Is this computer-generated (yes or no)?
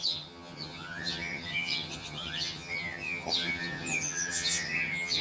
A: yes